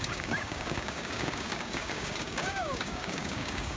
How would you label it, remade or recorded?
remade